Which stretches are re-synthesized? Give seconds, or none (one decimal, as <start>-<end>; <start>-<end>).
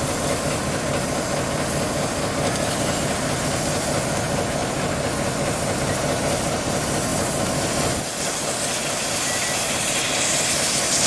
none